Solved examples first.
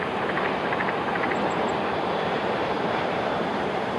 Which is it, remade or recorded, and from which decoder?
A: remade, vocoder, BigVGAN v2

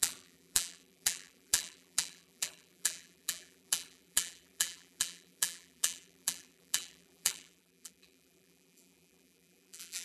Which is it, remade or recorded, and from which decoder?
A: remade, vocoder, BigVGAN v2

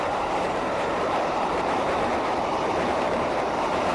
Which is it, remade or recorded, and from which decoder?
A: remade, vocoder, BigVGAN v2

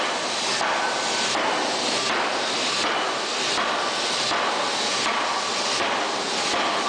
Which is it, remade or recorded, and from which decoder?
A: recorded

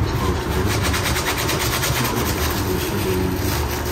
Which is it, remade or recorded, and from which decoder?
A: recorded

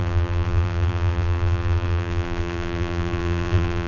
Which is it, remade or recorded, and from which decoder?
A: remade, vocoder, BigVGAN v2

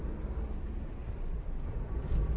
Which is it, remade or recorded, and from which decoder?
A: recorded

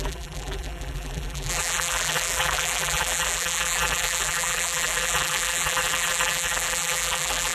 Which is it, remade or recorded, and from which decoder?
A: remade, vocoder, BigVGAN v2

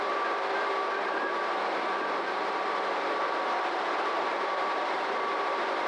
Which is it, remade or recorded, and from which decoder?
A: remade, vocoder, BigVGAN v2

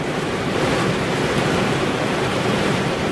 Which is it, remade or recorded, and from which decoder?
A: recorded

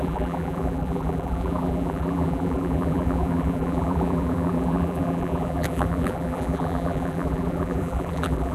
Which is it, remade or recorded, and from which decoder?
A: remade, vocoder, BigVGAN v2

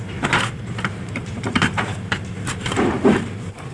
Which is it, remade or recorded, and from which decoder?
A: remade, vocoder, BigVGAN v2